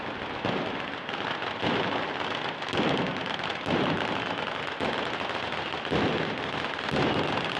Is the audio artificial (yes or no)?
no